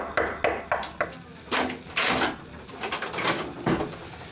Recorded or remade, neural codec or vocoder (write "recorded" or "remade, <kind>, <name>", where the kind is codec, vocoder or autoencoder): recorded